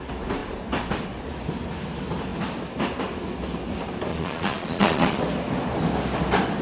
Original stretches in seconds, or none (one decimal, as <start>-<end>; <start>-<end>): 0.0-4.1; 5.2-6.6